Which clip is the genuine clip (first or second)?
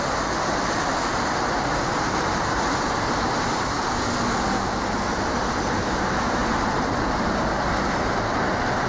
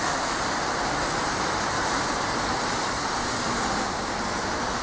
first